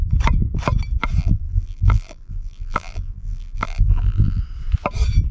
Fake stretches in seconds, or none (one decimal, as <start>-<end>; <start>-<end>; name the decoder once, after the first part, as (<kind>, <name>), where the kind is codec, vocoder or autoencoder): 1.2-4.4 (vocoder, BigVGAN v2)

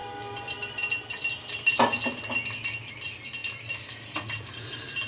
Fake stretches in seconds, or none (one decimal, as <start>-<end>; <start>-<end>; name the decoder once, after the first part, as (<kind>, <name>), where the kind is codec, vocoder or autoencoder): none

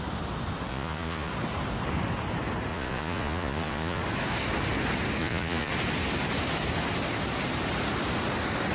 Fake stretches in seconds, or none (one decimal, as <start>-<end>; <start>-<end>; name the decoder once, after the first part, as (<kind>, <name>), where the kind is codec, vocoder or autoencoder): 0.7-1.3 (vocoder, Vocos); 2.7-4.0; 5.2-5.7

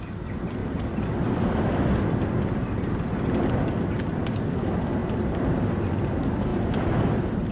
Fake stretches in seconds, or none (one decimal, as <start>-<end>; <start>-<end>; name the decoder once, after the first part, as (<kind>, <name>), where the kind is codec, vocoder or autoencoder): 0.6-3.3 (vocoder, BigVGAN v2); 5.0-5.7

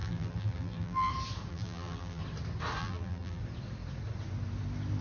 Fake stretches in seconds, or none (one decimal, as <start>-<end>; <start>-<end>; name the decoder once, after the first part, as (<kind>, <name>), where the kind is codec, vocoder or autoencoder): 0.0-1.1 (vocoder, BigVGAN v2); 1.5-2.2; 2.8-3.4

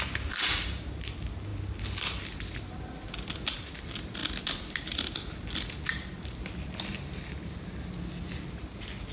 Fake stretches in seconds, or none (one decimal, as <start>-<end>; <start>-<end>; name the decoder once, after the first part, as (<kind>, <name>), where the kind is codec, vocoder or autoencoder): none

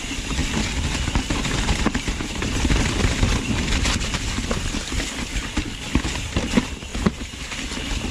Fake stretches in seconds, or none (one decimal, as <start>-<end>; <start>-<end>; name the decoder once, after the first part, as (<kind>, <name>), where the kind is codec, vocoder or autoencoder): 0.0-6.9 (vocoder, BigVGAN v2); 7.4-8.1

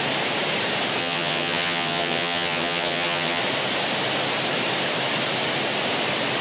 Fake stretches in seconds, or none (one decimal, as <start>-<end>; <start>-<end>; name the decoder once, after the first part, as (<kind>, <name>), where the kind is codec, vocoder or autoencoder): 1.0-3.4 (vocoder, HiFi-GAN)